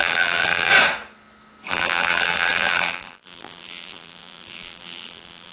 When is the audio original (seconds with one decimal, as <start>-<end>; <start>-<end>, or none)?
0.7-1.7